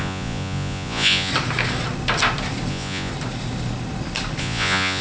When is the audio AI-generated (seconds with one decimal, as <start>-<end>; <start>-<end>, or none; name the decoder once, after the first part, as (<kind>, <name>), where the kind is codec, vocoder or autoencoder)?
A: 0.0-1.3 (vocoder, Vocos); 2.7-3.1; 4.4-5.0